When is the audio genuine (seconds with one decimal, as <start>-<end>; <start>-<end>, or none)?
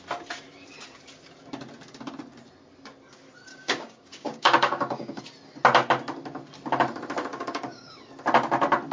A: 0.0-3.5; 5.2-7.3; 8.0-8.9